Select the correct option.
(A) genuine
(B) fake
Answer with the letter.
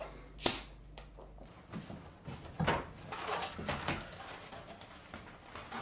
A